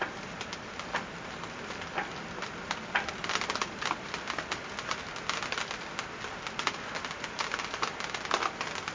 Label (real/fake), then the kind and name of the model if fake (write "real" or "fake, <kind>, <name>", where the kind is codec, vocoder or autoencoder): real